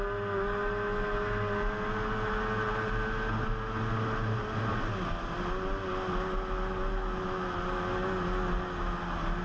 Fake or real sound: real